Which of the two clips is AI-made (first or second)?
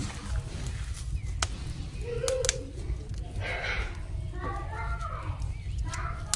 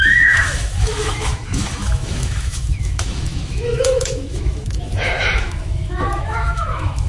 second